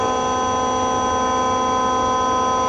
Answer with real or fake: real